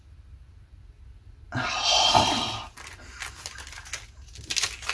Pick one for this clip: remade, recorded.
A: recorded